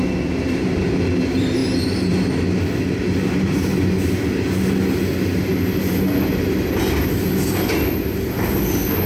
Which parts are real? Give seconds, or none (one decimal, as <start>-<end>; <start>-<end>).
0.0-9.1